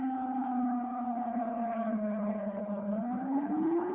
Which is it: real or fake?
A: fake